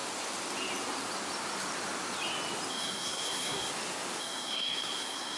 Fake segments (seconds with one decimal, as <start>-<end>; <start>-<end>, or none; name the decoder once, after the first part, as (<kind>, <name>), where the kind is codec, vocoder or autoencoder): 2.7-3.7 (codec, SNAC); 4.2-5.4